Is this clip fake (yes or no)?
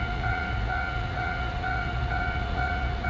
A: yes